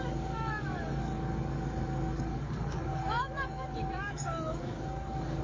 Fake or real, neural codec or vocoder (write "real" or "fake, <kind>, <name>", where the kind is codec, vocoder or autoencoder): fake, codec, DAC